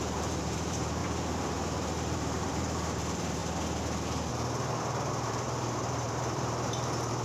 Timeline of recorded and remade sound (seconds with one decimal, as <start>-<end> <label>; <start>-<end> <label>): 0.0-3.4 remade; 3.4-5.1 recorded; 5.1-7.2 remade